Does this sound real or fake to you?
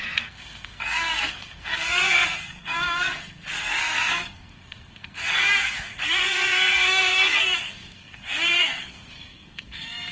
fake